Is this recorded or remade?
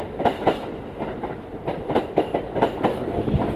recorded